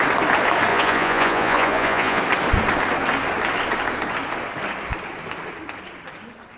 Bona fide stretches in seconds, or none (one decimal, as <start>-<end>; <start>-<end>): 0.0-0.7; 2.2-6.6